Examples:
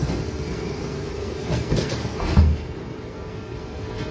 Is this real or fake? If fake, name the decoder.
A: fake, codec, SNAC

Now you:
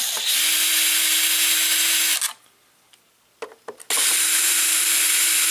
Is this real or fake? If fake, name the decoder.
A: real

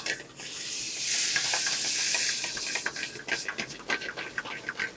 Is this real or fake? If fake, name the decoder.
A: real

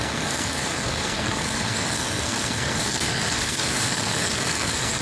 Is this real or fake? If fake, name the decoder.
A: fake, codec, SNAC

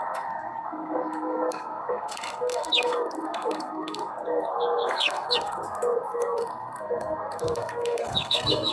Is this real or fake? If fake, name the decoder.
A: fake, codec, SNAC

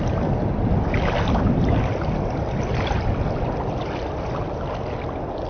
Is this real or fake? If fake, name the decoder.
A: real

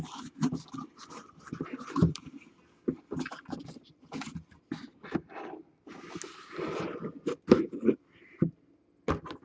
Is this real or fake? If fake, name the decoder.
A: real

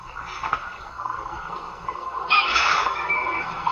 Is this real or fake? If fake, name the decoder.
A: fake, codec, SNAC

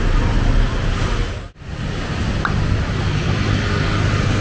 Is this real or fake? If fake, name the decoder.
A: real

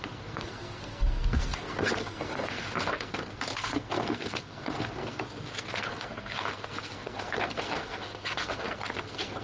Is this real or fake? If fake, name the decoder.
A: fake, codec, SNAC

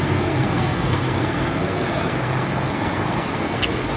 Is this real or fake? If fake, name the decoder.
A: fake, codec, SNAC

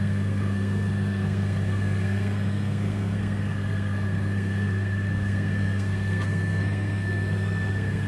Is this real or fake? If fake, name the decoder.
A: fake, codec, SNAC